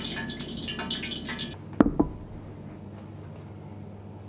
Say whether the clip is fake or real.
real